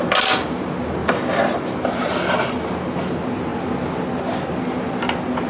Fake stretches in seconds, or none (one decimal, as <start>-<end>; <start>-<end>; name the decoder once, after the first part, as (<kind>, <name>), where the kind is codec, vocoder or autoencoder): none